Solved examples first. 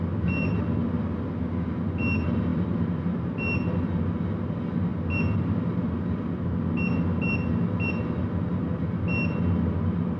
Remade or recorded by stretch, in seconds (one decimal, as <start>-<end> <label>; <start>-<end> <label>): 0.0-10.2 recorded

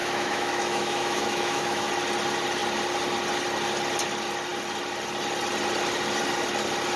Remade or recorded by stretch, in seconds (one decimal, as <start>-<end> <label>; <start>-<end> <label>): 0.0-1.9 remade; 1.9-7.0 recorded

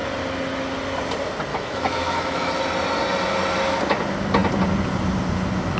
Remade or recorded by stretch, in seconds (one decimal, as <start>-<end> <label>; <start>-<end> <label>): 0.0-1.5 recorded; 1.5-2.5 remade; 2.5-5.8 recorded

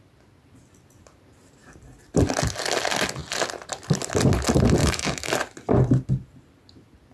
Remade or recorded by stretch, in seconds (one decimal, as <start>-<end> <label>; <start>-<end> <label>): 0.0-4.8 recorded; 4.8-5.3 remade; 5.3-7.1 recorded